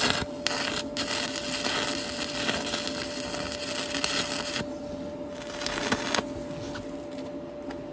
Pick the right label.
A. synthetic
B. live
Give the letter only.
B